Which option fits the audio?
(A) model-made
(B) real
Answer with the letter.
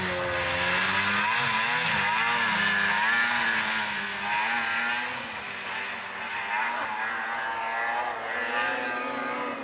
B